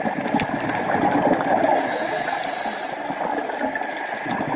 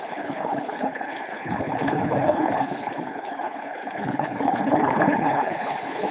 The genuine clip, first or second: first